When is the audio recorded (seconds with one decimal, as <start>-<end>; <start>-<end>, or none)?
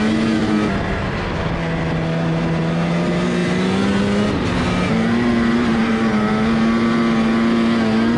0.0-0.4; 1.5-4.9; 5.9-8.2